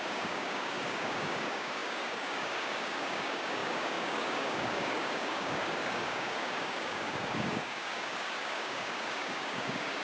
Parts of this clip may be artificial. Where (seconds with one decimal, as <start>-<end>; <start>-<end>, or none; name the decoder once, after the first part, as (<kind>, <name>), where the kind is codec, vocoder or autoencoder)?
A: 0.0-10.0 (codec, DAC)